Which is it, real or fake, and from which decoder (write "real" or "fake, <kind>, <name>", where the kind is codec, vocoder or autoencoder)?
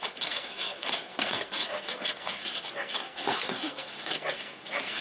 fake, codec, SNAC